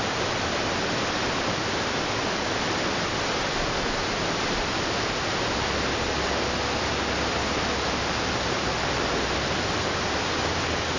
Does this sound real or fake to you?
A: real